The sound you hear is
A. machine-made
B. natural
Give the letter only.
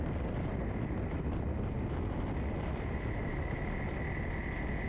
B